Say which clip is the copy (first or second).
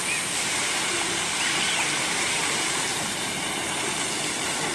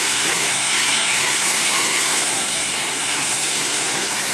second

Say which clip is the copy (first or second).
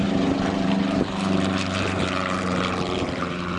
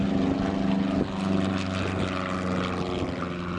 first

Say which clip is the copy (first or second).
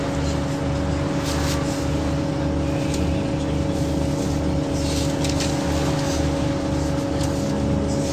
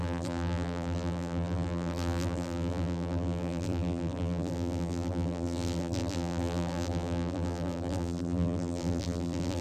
second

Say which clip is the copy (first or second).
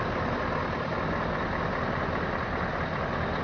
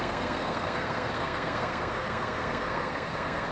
second